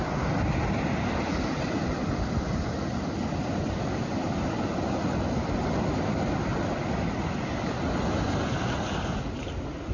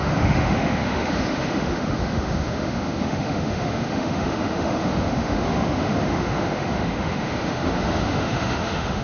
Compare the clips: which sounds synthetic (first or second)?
second